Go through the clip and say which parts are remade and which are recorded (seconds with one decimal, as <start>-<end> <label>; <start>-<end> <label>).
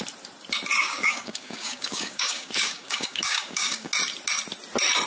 0.0-0.8 recorded; 0.8-3.9 remade; 3.9-5.1 recorded